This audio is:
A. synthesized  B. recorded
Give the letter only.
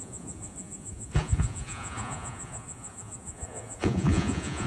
A